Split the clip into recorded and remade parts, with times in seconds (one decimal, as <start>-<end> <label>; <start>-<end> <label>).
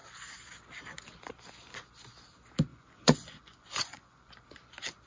0.0-2.7 recorded; 2.7-4.3 remade; 4.3-5.1 recorded